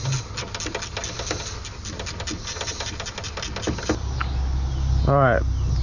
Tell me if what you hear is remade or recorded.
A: recorded